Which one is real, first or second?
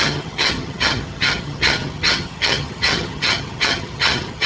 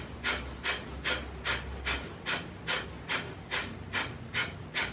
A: second